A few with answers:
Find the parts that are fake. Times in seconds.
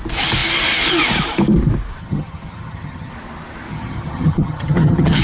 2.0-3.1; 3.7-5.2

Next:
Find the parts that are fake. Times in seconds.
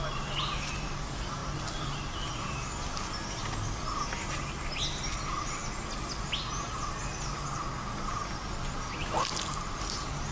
none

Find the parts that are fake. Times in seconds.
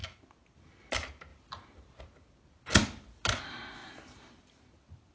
none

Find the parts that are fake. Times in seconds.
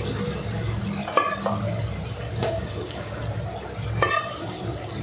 0.0-0.8; 2.4-3.2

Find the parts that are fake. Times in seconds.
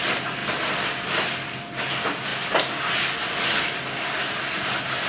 none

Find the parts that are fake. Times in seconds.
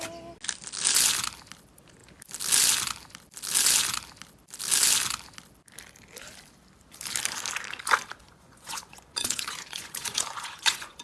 8.2-11.0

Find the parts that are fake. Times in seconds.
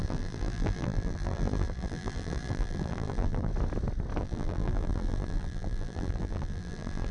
0.0-3.5; 4.2-7.1